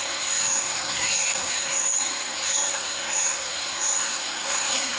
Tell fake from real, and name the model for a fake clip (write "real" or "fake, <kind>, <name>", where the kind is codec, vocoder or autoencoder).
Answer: fake, codec, SNAC